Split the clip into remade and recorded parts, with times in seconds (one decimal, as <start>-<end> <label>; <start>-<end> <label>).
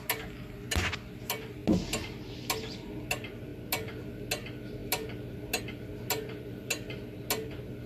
0.0-7.9 recorded